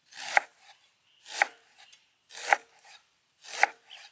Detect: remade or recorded recorded